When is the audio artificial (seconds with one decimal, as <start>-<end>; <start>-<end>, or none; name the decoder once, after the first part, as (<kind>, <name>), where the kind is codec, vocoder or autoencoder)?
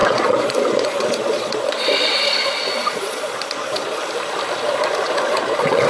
0.0-4.0 (vocoder, Vocos); 4.8-5.9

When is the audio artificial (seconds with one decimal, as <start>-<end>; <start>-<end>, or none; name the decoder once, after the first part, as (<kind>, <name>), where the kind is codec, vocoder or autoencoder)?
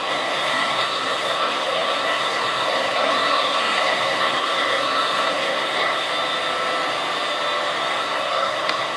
0.0-6.1 (codec, SNAC); 7.9-9.0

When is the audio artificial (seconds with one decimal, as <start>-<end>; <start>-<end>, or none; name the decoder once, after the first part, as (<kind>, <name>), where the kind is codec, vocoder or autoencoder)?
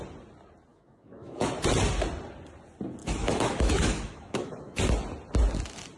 0.7-1.5 (autoencoder, DAC-VAE); 3.0-4.8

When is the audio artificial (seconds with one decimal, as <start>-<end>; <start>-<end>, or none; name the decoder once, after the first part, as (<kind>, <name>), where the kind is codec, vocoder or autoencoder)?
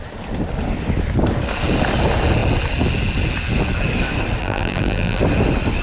4.4-5.2 (vocoder, BigVGAN v2)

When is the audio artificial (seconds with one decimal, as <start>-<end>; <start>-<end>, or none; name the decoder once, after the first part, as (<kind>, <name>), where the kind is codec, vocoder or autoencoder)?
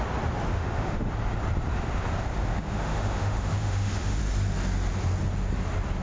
0.5-1.1 (autoencoder, DAC-VAE); 2.5-4.2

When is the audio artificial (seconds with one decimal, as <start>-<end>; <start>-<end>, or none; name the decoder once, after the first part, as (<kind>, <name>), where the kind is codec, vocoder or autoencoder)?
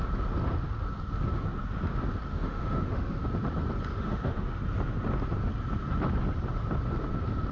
2.3-3.2 (autoencoder, DAC-VAE); 3.9-4.6